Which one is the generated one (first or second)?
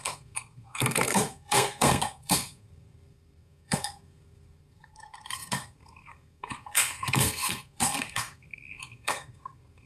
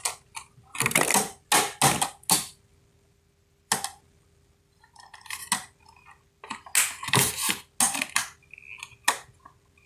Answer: first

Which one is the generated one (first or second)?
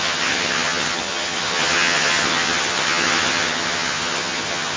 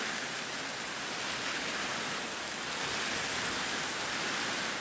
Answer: first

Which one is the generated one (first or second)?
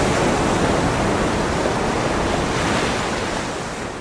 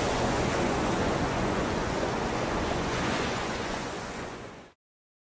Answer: second